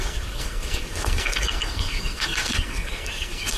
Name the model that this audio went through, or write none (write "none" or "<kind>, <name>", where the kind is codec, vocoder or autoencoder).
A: codec, SNAC